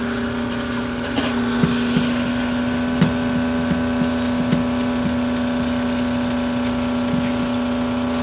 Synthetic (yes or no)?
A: no